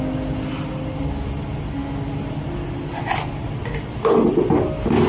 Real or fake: real